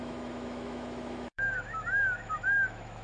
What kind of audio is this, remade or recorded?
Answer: remade